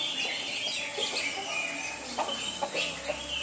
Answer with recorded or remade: recorded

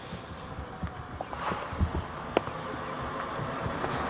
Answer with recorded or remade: recorded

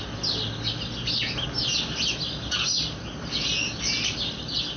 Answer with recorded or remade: recorded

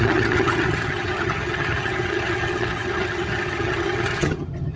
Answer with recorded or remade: remade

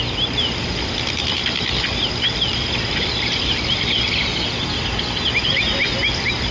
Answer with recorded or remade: recorded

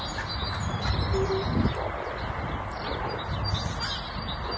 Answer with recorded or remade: recorded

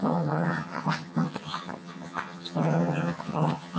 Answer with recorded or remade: remade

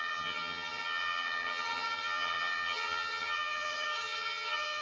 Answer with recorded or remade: remade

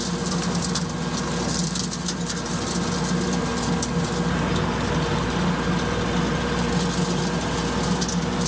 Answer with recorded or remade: recorded